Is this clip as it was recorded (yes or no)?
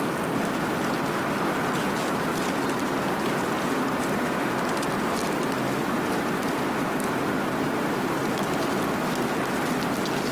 yes